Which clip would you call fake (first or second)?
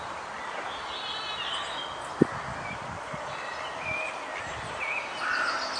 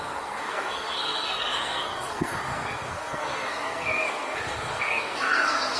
second